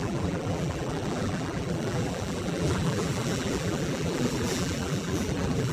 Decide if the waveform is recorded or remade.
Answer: remade